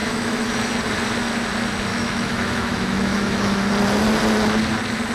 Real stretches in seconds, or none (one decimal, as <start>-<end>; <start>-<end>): 0.5-1.9; 3.7-5.1